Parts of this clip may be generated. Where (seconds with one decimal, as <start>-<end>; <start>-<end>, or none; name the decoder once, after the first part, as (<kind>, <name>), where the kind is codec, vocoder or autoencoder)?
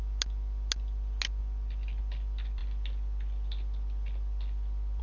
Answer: none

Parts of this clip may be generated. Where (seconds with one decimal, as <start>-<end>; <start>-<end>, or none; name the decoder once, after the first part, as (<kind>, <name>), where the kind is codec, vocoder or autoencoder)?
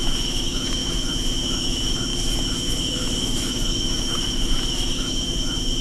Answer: 0.0-5.8 (autoencoder, DAC-VAE)